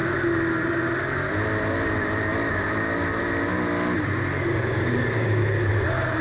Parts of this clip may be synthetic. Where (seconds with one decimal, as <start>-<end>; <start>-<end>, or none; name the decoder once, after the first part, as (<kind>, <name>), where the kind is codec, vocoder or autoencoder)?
4.5-5.7 (codec, DAC)